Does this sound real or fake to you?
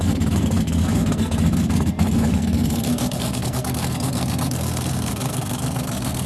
fake